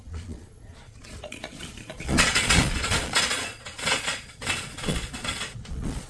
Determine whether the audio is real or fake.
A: fake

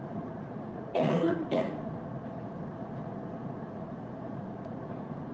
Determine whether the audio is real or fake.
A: fake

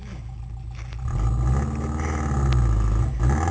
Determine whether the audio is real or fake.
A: real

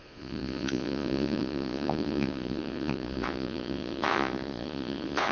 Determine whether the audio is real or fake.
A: fake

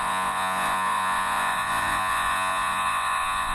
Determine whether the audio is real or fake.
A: fake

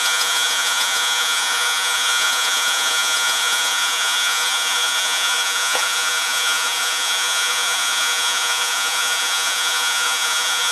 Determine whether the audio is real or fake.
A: fake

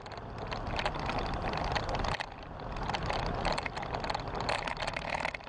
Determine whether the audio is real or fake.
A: real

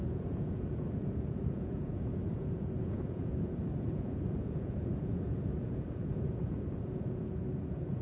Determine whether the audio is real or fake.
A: fake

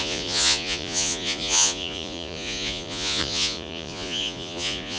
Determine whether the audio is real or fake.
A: fake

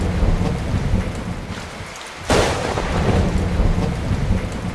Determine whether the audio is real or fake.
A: real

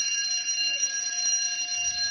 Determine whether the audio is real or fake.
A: real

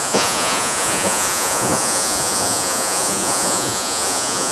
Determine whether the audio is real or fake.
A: fake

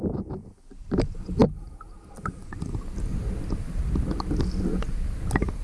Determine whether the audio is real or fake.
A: real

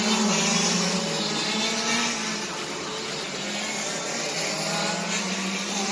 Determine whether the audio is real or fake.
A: real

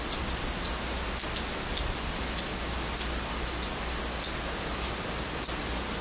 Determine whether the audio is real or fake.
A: real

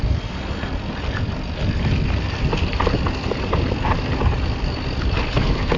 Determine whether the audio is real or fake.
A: real